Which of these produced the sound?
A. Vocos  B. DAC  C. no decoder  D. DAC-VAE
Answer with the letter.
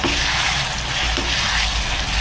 C